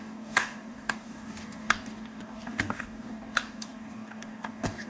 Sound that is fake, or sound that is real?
fake